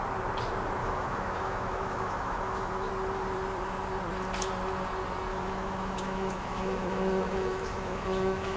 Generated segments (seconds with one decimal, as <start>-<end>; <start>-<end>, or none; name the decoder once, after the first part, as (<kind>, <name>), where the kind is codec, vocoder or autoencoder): 0.8-2.9 (autoencoder, DAC-VAE); 5.3-8.6